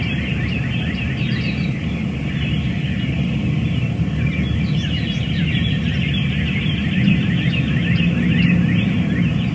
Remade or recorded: recorded